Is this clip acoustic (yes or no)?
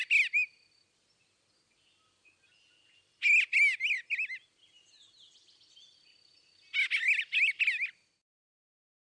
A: yes